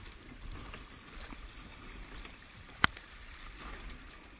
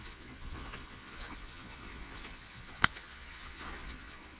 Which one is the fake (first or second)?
second